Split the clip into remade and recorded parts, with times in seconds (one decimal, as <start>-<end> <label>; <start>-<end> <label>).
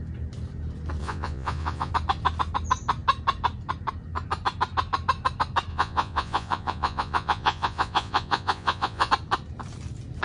0.0-1.0 recorded; 1.0-1.9 remade; 1.9-5.7 recorded; 5.7-9.1 remade; 9.1-10.2 recorded